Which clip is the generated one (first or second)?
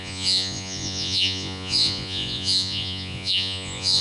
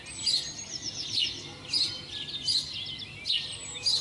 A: first